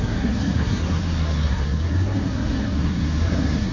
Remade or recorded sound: remade